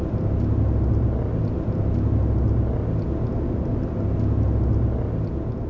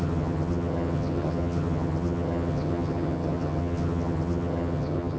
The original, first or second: first